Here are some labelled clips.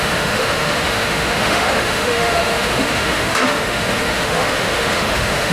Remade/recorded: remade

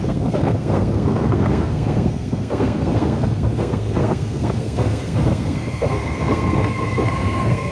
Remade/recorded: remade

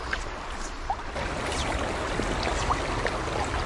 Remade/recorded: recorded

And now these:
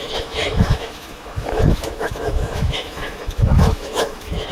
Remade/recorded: remade